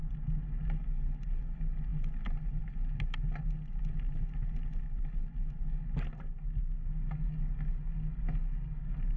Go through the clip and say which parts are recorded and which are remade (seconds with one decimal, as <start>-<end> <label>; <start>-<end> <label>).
0.0-9.2 recorded